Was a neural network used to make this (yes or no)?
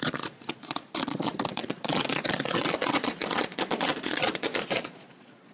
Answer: yes